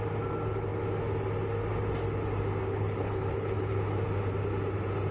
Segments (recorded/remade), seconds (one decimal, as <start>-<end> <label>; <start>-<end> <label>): 0.0-2.7 recorded; 2.7-3.8 remade; 3.8-5.1 recorded

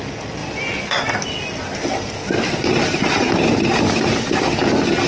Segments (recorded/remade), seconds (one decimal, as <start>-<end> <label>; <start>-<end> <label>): 0.0-2.2 recorded; 2.2-3.8 remade; 3.8-5.1 recorded

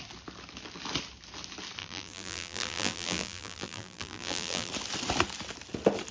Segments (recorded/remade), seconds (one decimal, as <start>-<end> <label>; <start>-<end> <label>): 0.0-1.8 recorded; 1.8-4.7 remade; 4.7-6.1 recorded

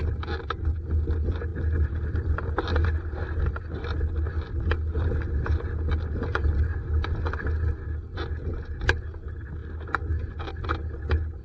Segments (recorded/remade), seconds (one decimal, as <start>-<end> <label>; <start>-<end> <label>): 0.0-11.4 recorded

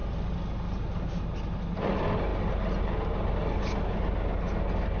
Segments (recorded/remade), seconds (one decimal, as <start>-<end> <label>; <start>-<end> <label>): 0.0-5.0 recorded